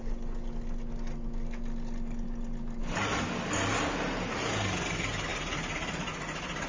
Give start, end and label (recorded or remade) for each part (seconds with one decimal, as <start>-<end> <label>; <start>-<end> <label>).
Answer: 0.0-6.7 recorded